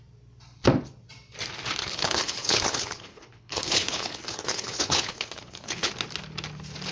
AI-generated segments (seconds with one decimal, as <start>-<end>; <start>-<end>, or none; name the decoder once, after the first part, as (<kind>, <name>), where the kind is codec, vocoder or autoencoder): 1.8-5.9 (codec, HILCodec)